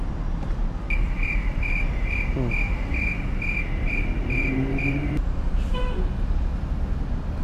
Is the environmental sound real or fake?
real